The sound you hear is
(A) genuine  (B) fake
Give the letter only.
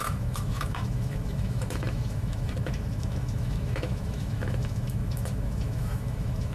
B